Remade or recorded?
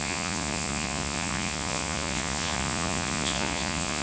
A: remade